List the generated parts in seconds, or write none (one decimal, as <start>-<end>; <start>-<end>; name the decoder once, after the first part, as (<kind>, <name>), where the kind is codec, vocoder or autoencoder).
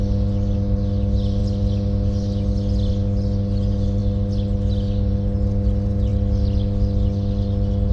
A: none